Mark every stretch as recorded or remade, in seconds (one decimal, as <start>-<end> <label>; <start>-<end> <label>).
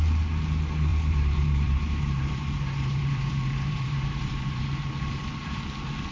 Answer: 0.0-0.9 recorded; 0.9-4.6 remade; 4.6-6.1 recorded